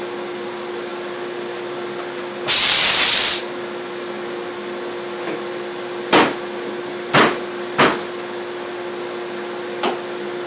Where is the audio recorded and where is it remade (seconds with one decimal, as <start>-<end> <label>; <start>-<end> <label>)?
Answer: 0.0-10.5 recorded